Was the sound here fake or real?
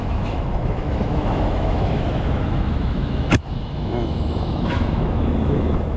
fake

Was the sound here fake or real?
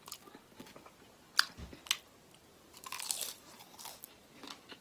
real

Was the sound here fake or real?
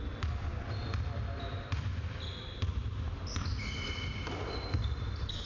real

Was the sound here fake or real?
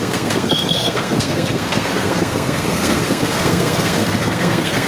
fake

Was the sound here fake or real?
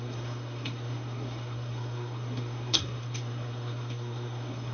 fake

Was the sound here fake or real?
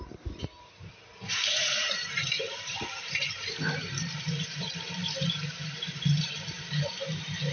fake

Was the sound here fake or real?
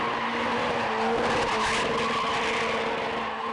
real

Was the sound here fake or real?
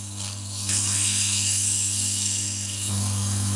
fake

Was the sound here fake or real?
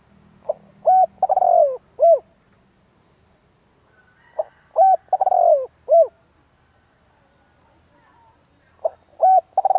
real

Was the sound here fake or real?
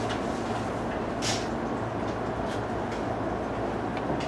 real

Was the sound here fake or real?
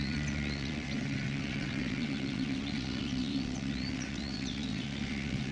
fake